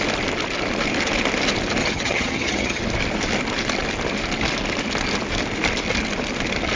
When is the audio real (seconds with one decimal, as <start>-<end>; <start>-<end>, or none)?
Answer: 0.0-1.8; 2.8-6.8